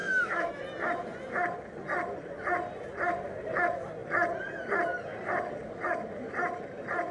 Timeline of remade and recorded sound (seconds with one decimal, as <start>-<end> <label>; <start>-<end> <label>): 0.0-0.5 remade; 0.5-7.1 recorded